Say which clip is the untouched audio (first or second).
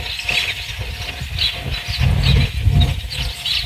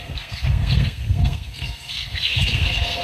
first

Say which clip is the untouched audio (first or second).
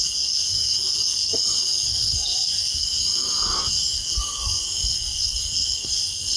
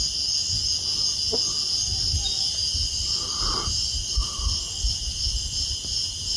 second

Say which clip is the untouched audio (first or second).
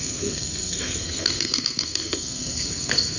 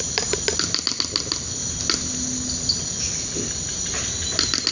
second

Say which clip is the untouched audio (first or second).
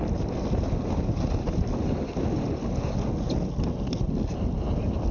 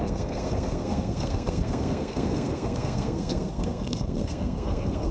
first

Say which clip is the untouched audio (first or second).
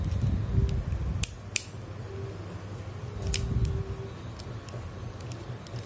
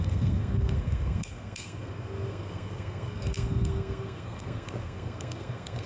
first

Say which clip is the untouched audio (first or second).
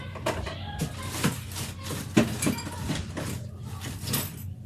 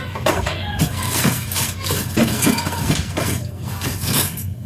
first